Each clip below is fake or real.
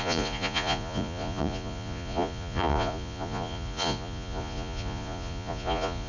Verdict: fake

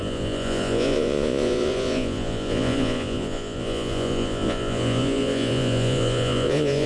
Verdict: fake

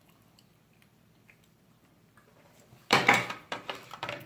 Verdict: fake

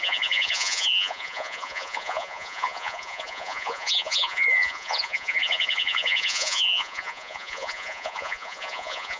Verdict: fake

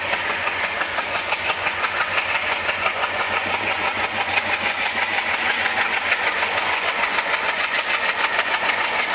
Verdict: fake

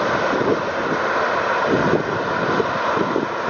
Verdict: real